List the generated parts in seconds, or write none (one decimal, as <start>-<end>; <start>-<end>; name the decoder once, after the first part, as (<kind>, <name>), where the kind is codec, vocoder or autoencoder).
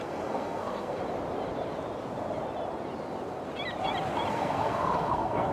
0.0-1.0 (codec, SNAC); 4.3-5.5